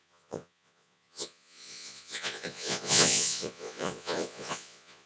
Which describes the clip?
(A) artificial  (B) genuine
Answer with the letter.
A